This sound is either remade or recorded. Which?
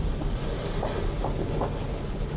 recorded